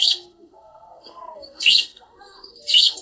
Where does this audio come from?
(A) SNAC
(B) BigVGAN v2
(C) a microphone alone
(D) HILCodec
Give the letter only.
A